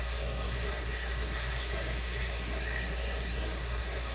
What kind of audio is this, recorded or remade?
remade